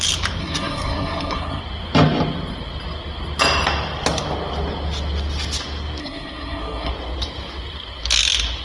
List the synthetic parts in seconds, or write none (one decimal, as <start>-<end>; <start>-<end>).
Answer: 0.4-1.6; 6.0-6.9